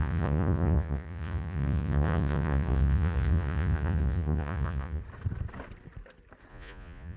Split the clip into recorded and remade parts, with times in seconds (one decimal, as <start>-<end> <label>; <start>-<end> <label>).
0.0-5.0 remade; 5.0-6.5 recorded; 6.5-7.2 remade